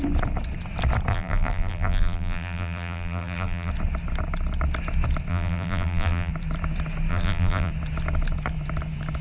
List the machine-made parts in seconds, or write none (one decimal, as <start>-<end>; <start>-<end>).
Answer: 1.1-3.7; 5.3-6.3; 7.1-7.7